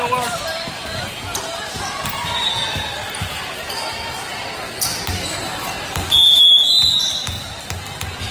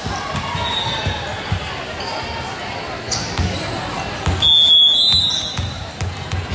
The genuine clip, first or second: second